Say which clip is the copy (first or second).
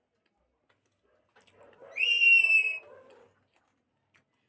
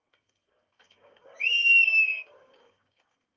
second